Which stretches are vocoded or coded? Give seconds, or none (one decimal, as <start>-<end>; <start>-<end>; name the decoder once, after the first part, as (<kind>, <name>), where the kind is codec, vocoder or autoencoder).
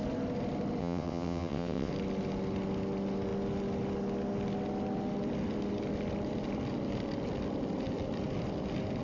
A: 0.8-1.9 (vocoder, WaveNeXt)